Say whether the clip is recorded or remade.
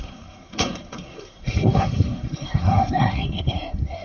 remade